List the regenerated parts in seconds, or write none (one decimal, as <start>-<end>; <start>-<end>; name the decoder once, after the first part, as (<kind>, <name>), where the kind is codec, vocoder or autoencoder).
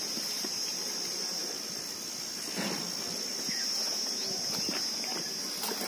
none